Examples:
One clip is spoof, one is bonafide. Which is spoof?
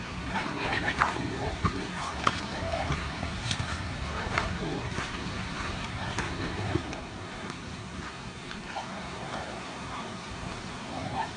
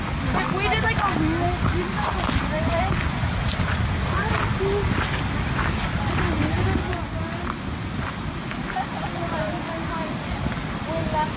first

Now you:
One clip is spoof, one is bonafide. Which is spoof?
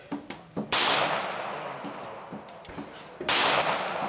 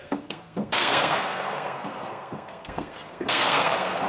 second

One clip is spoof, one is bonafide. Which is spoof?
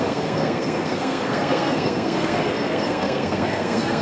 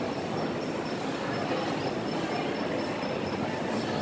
first